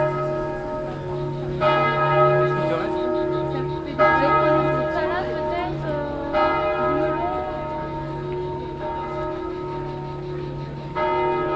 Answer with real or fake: real